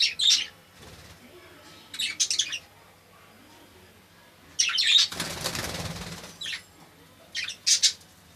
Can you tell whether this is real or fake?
real